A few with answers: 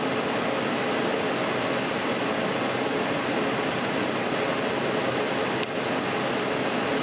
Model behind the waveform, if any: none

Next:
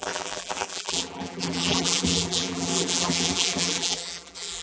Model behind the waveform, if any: vocoder, BigVGAN v2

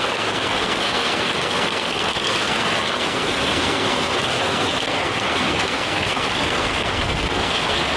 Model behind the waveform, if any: codec, SNAC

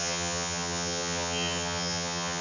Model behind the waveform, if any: vocoder, HiFi-GAN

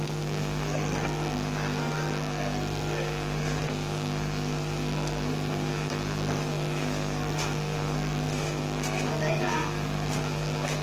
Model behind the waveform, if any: codec, SNAC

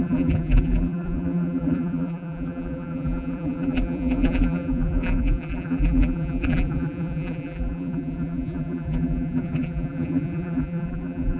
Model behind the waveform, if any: vocoder, BigVGAN v2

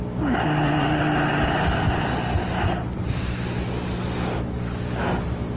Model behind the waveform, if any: none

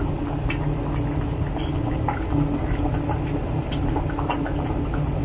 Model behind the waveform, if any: none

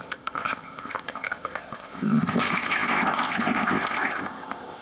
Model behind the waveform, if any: codec, ZipCodec